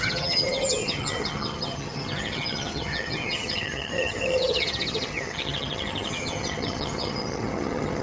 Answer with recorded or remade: remade